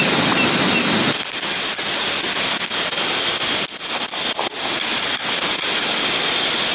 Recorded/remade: recorded